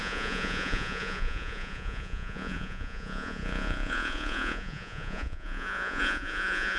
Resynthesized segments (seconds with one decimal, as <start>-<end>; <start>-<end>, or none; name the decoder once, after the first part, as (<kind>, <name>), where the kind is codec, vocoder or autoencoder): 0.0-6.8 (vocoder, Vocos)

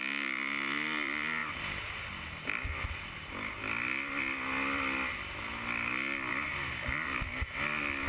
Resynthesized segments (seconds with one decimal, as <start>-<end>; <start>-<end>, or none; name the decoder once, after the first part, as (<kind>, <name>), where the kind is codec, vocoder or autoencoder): none

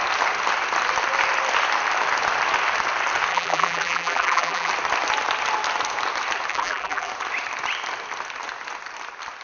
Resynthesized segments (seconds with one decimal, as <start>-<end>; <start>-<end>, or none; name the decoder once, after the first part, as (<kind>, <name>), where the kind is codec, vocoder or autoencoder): 3.3-4.7 (vocoder, BigVGAN v2); 6.5-7.1

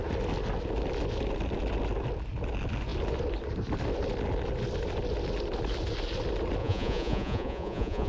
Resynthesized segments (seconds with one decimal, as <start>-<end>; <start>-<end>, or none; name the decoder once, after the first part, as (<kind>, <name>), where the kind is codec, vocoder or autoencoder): 6.6-8.1 (vocoder, Vocos)